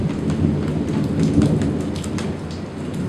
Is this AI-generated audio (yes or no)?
no